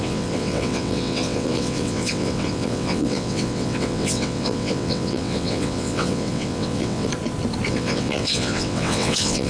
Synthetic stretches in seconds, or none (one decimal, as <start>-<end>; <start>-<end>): 0.0-7.1; 7.7-9.5